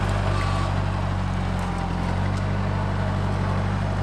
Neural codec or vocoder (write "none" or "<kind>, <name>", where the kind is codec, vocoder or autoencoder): none